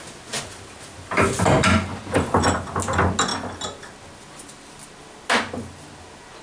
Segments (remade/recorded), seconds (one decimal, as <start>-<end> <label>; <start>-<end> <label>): 0.0-6.4 recorded